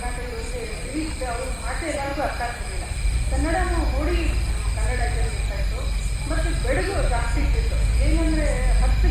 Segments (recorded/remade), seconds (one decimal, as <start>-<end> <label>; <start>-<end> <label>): 0.0-6.9 recorded; 6.9-8.0 remade; 8.0-9.1 recorded